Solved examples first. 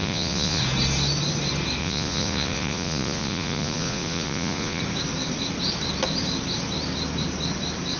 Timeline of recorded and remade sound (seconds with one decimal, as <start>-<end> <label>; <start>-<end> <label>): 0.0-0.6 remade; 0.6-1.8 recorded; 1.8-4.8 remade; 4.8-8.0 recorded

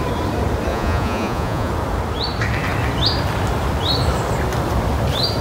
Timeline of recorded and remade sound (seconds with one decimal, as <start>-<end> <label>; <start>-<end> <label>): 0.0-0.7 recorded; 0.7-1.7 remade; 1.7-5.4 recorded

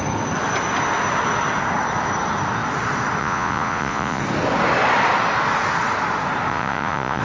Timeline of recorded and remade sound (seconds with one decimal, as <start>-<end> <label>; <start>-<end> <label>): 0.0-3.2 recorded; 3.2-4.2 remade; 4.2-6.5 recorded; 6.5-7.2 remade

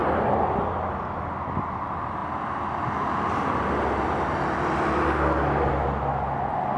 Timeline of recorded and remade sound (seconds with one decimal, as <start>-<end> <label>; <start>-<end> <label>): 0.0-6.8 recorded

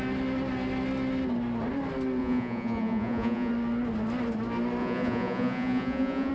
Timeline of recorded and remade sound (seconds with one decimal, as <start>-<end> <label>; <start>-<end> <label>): 0.0-2.2 recorded; 2.2-3.5 remade; 3.5-4.8 recorded; 4.8-6.3 remade

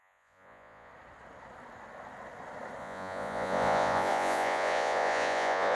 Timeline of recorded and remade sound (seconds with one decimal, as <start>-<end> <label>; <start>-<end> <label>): 0.0-0.9 remade; 0.9-2.8 recorded; 2.8-5.7 remade